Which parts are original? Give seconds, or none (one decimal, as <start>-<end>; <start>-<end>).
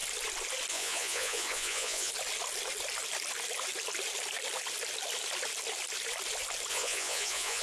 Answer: 0.0-0.7; 2.1-6.7